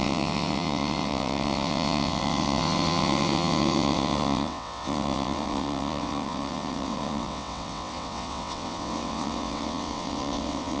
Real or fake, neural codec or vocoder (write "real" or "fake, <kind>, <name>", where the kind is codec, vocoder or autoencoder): fake, vocoder, WaveNeXt